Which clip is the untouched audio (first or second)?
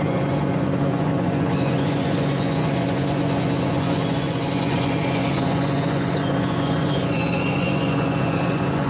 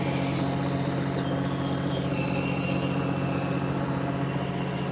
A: second